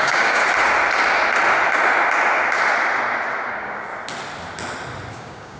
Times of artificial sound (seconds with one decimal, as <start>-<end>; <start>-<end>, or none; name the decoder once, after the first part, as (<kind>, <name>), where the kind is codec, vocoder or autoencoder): 0.0-0.4 (codec, DAC); 3.5-3.9; 5.1-5.6